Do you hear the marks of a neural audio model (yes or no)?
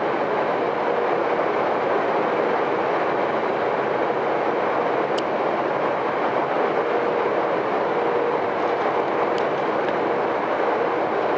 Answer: no